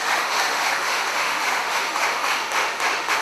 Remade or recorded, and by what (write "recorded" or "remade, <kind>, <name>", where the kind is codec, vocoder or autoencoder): remade, autoencoder, DAC-VAE